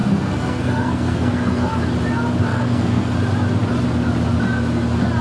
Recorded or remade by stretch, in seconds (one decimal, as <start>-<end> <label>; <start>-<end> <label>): 0.0-1.8 remade; 1.8-2.5 recorded; 2.5-3.1 remade; 3.1-5.2 recorded